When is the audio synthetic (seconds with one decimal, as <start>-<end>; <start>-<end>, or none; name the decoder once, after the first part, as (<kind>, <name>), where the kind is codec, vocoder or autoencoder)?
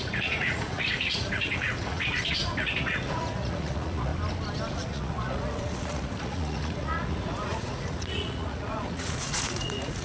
0.0-4.1 (vocoder, Vocos); 4.7-10.0